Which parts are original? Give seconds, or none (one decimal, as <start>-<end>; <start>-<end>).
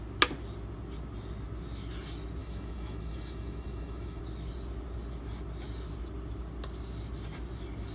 0.0-2.4; 4.2-7.9